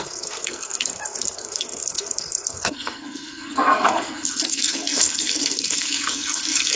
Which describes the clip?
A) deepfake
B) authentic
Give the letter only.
A